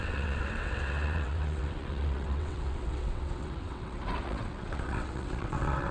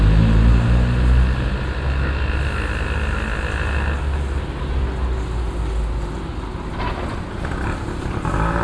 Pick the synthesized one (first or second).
first